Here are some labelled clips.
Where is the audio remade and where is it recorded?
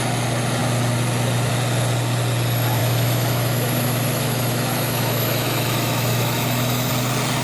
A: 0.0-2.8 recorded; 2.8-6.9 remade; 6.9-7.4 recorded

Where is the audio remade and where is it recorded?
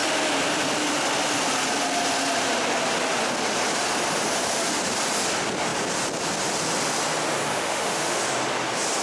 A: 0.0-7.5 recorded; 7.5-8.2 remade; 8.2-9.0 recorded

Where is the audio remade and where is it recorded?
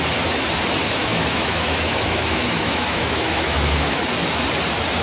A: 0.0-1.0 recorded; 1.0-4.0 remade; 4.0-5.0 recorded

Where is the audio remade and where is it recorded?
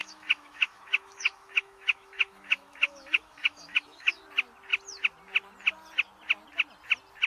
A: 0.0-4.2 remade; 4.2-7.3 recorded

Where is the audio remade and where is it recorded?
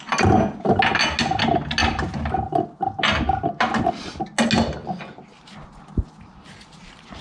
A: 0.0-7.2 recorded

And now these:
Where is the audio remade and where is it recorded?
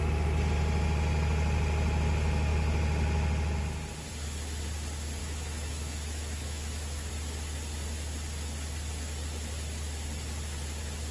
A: 0.0-5.2 recorded; 5.2-7.1 remade; 7.1-11.1 recorded